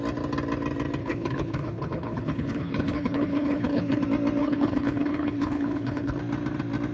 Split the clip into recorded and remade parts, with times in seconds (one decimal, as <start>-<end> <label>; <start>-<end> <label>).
0.0-1.0 recorded; 1.0-4.0 remade; 4.0-4.4 recorded; 4.4-6.2 remade; 6.2-6.9 recorded